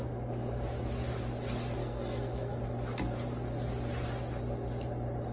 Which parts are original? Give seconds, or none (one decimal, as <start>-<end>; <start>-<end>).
0.0-1.8; 2.6-5.3